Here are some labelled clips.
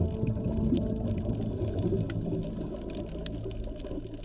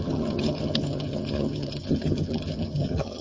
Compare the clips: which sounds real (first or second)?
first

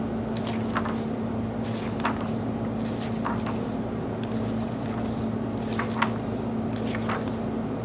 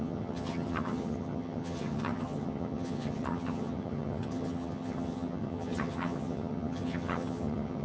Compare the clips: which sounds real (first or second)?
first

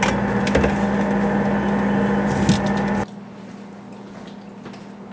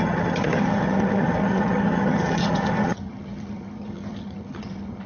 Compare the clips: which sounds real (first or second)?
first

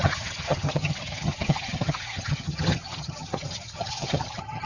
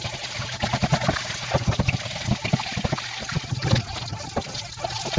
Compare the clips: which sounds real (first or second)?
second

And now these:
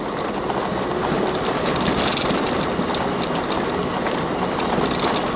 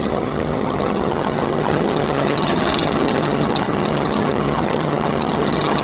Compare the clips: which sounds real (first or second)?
first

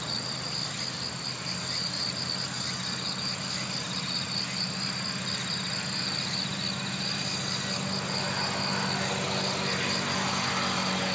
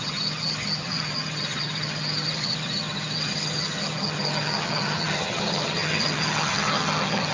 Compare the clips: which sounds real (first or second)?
first